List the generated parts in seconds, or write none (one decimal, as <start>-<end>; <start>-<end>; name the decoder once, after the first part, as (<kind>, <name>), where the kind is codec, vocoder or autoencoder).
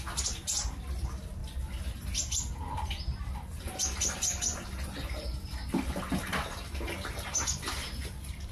none